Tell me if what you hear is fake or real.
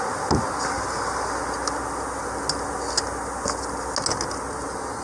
real